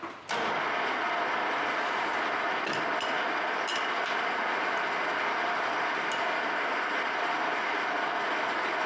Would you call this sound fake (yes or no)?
no